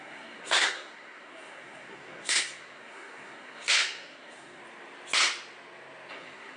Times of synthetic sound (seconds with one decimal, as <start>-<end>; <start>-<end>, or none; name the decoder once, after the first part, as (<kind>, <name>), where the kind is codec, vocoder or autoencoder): 0.0-4.6 (codec, SNAC); 6.1-6.6